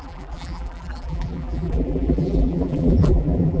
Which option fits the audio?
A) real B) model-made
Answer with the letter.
B